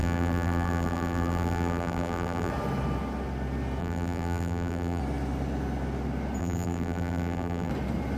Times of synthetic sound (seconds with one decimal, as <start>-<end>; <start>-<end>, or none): 0.0-2.5; 3.8-5.0; 6.4-7.7